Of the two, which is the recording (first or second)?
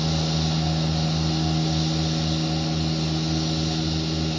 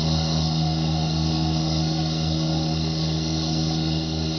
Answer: first